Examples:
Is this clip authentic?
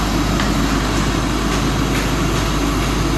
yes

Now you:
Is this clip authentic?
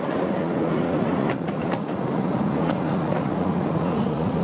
no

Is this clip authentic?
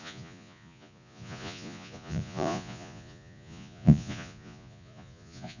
no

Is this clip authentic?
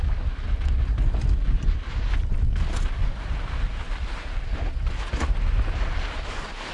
yes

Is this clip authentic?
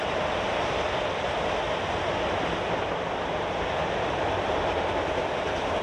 yes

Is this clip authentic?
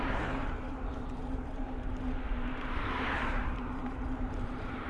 no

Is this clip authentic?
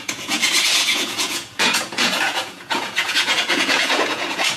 no